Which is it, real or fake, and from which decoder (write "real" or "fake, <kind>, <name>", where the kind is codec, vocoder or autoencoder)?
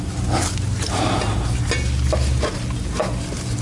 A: real